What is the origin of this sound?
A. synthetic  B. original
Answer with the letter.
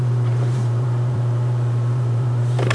A